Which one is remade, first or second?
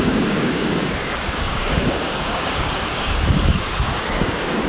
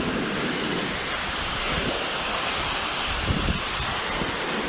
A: first